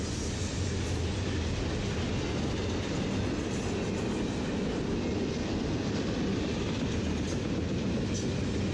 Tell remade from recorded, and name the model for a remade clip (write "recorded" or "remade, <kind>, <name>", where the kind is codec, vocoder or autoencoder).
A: recorded